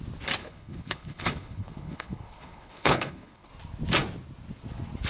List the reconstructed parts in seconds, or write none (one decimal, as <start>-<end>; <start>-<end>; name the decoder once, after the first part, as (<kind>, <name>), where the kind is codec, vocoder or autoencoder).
0.4-3.5 (codec, HILCodec)